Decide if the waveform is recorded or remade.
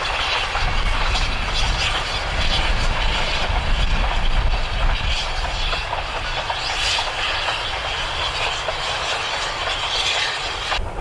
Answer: recorded